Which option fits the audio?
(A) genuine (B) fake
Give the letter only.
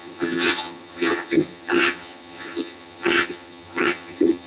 B